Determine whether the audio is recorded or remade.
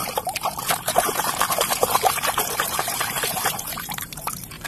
remade